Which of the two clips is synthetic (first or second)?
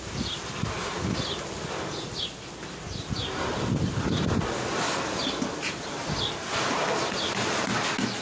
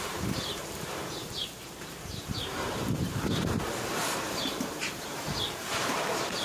second